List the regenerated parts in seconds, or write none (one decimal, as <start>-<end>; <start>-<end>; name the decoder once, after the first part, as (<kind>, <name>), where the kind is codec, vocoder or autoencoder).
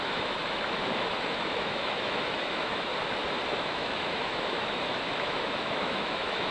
0.0-2.9 (autoencoder, DAC-VAE); 3.6-6.5